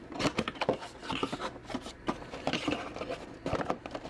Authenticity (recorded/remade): recorded